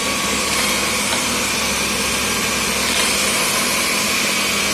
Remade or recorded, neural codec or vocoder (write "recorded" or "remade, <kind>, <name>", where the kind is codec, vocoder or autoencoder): recorded